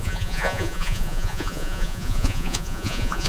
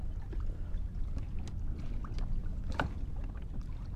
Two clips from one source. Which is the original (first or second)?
second